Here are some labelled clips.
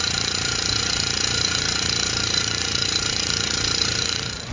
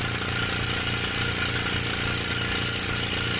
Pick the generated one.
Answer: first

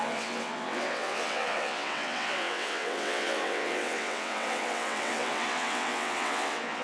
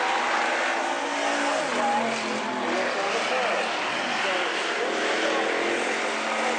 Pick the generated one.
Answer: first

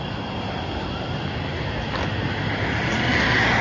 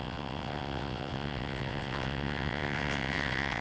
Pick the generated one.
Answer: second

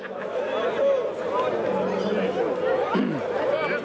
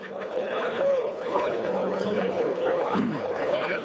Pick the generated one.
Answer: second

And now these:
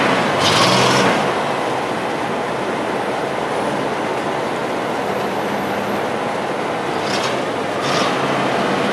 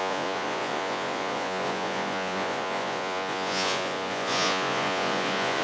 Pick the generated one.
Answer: second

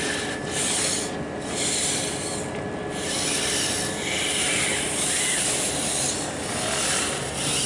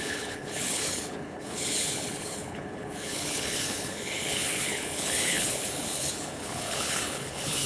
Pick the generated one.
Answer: second